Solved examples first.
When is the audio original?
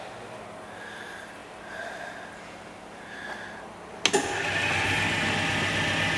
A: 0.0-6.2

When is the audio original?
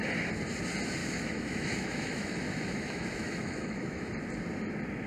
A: 0.0-1.0; 4.1-5.1